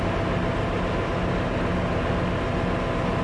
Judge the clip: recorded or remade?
recorded